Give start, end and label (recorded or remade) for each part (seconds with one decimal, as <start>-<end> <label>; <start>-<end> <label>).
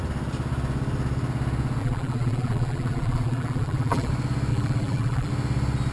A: 0.0-1.8 recorded; 1.8-4.1 remade; 4.1-4.5 recorded; 4.5-5.3 remade; 5.3-5.9 recorded